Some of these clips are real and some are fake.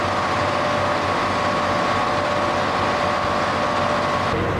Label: real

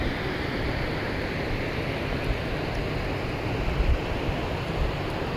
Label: real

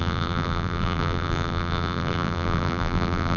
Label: fake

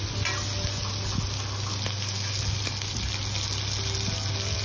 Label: real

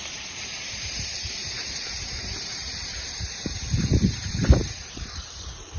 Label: fake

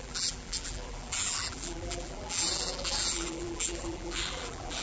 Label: fake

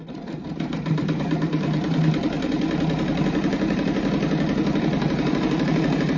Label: fake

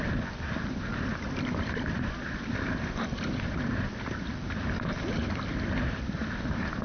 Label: fake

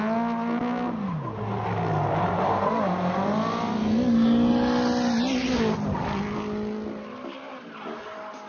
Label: real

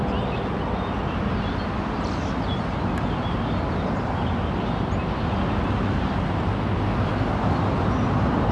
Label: real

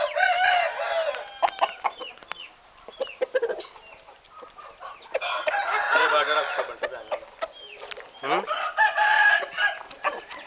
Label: real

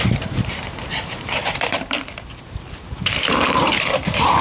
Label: fake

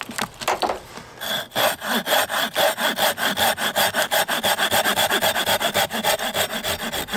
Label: fake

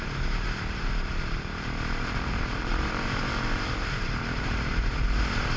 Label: fake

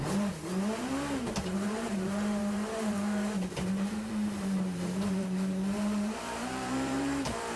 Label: fake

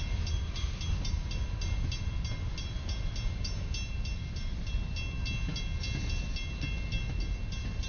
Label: real